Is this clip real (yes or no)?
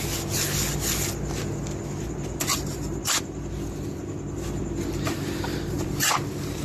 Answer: yes